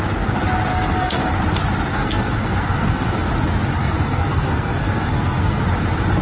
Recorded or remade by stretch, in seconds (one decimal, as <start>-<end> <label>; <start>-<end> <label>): 0.0-0.7 recorded; 0.7-1.3 remade; 1.3-1.9 recorded; 1.9-3.3 remade; 3.3-3.8 recorded; 3.8-5.6 remade; 5.6-6.2 recorded

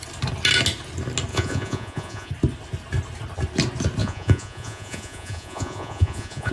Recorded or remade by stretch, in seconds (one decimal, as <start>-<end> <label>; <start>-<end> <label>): 0.0-1.3 recorded; 1.3-2.3 remade; 2.3-4.0 recorded; 4.0-6.5 remade

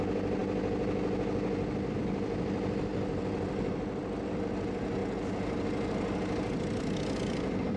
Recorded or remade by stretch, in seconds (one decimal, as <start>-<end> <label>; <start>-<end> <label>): 0.0-7.8 recorded

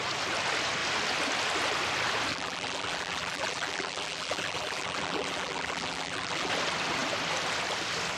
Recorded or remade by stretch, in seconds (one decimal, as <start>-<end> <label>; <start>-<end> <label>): 0.0-2.3 recorded; 2.3-6.5 remade; 6.5-8.2 recorded

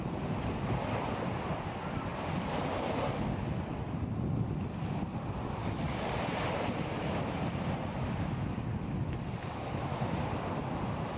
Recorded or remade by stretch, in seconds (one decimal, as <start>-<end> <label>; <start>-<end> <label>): 0.0-11.2 remade

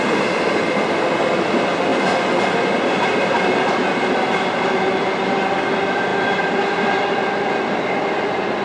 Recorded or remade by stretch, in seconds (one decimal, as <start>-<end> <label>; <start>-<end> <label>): 0.0-8.6 recorded

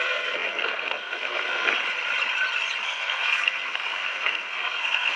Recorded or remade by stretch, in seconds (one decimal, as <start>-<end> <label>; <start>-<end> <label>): 0.0-1.7 remade; 1.7-2.8 recorded; 2.8-5.2 remade